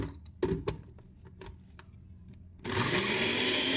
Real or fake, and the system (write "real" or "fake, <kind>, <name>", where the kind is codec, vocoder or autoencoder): real